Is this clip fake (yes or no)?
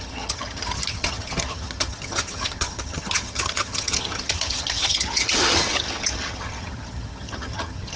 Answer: yes